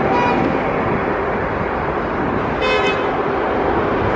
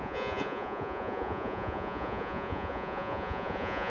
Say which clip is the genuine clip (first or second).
first